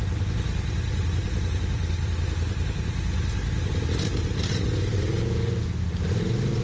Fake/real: real